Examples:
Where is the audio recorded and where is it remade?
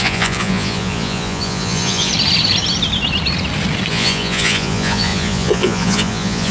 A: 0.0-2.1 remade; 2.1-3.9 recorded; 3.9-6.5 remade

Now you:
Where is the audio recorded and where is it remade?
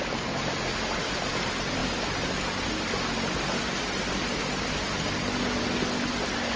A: 0.0-6.6 recorded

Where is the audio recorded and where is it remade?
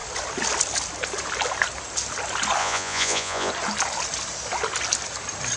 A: 0.0-2.6 recorded; 2.6-3.5 remade; 3.5-5.6 recorded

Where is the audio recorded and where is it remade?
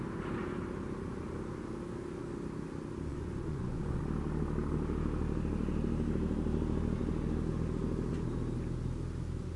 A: 0.0-3.1 recorded; 3.1-4.0 remade; 4.0-9.6 recorded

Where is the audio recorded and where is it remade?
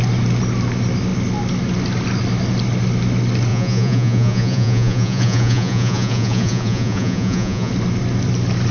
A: 0.0-3.5 recorded; 3.5-7.7 remade; 7.7-8.7 recorded